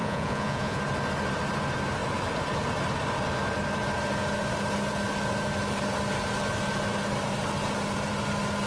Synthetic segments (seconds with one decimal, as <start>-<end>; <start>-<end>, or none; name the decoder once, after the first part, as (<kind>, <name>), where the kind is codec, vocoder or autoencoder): 0.0-0.8 (vocoder, Vocos)

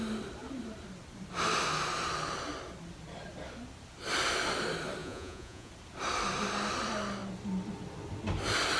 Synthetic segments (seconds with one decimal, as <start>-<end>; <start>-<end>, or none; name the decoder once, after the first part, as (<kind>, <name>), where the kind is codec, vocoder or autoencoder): 5.0-5.7 (vocoder, Vocos)